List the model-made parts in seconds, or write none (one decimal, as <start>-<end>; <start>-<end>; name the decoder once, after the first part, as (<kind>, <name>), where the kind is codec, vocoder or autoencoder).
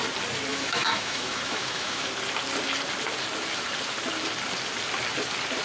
0.5-2.1 (autoencoder, DAC-VAE)